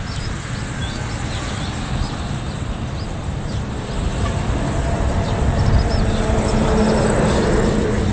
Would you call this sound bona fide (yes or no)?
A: yes